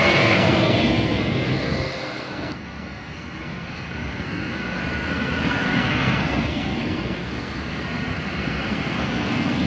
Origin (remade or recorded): remade